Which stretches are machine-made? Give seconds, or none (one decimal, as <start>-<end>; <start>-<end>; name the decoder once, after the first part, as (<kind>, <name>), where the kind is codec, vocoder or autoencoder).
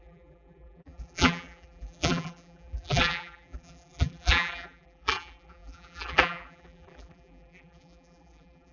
0.0-8.7 (vocoder, BigVGAN v2)